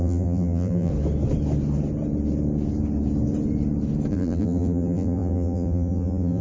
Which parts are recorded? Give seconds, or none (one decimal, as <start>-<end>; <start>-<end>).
0.9-4.1